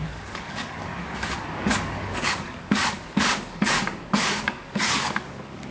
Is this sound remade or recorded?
remade